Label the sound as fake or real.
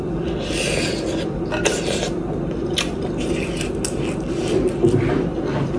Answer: real